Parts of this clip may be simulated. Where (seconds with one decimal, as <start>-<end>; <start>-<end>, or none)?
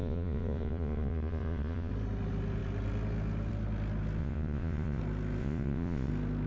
0.0-1.9; 4.2-5.0; 5.4-6.1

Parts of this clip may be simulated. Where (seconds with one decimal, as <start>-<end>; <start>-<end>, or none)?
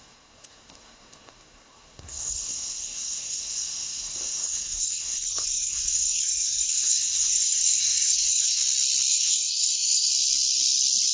0.0-8.6; 9.1-10.1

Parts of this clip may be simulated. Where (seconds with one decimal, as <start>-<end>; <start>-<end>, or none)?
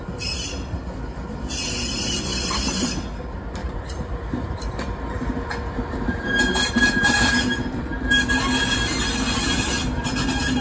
3.6-7.8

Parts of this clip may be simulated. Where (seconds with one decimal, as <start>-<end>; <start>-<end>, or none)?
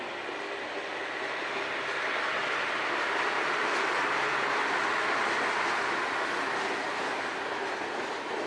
2.4-4.0